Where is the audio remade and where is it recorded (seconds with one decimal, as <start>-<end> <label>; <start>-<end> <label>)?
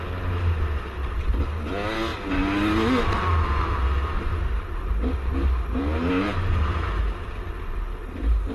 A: 0.0-1.0 recorded; 1.0-1.7 remade; 1.7-4.3 recorded; 4.3-6.8 remade; 6.8-8.5 recorded